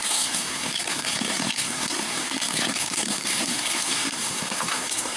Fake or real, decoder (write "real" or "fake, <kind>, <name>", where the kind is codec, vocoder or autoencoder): fake, codec, SNAC